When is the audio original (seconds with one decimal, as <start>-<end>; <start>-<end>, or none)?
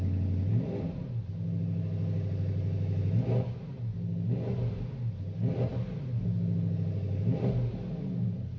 0.0-8.6